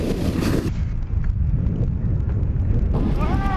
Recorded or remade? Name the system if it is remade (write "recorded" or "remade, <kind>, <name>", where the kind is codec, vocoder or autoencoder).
recorded